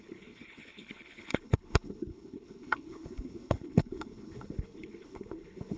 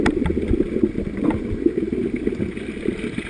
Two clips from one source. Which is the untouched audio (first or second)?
second